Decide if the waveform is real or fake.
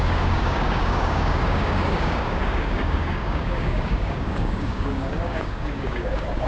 fake